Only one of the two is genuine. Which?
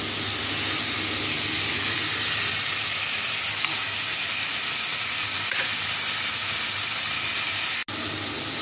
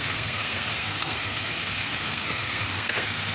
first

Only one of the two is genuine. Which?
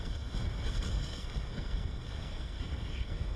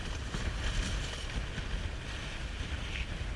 second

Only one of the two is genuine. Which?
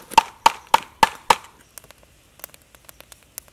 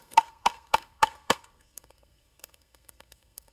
first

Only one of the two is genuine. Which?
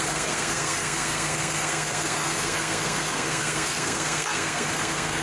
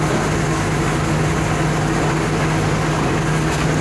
second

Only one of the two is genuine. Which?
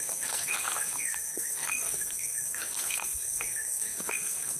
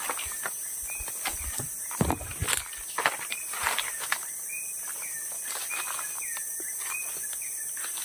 second